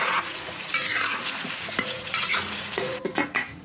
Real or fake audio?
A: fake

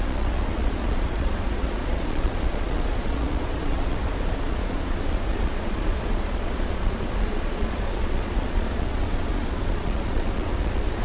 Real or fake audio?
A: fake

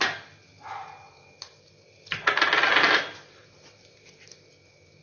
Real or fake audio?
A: real